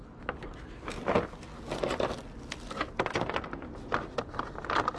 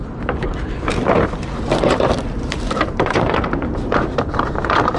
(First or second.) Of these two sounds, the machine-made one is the second